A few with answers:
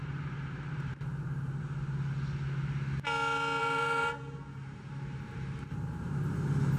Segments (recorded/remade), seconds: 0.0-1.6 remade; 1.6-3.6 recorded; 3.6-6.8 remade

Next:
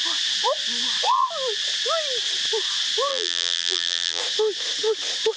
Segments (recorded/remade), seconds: 0.0-3.1 recorded; 3.1-4.2 remade; 4.2-5.4 recorded